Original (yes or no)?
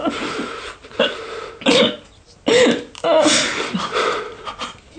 yes